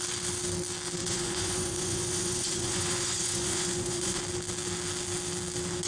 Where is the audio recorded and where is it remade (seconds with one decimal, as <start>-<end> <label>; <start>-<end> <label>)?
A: 0.0-1.0 recorded; 1.0-4.2 remade; 4.2-5.9 recorded